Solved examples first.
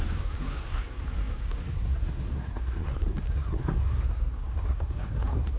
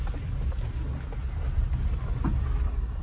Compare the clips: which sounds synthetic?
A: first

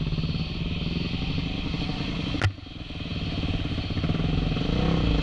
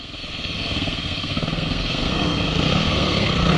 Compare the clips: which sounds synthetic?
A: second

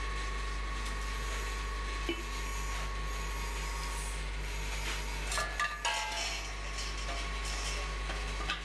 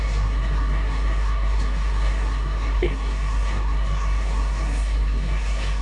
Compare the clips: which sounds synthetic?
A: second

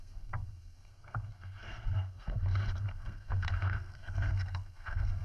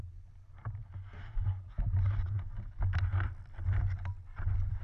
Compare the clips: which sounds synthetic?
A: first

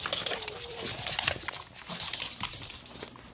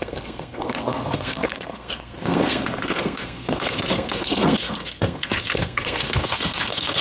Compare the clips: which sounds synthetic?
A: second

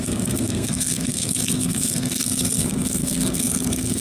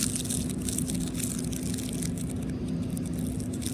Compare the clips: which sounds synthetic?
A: first